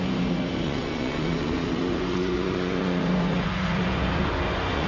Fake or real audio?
fake